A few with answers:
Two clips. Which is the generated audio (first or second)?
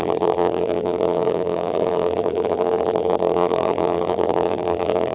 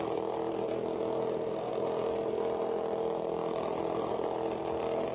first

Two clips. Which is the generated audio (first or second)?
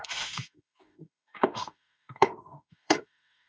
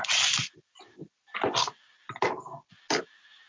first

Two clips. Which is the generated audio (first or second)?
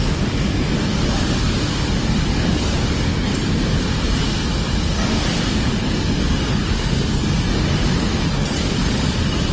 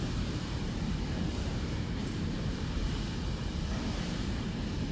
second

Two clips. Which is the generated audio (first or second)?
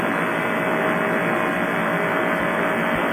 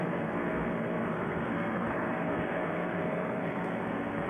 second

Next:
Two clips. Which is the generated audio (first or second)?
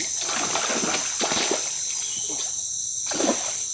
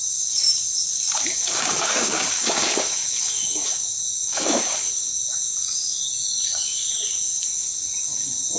second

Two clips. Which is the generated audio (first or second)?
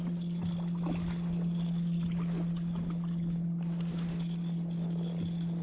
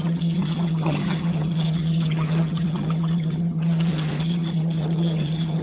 second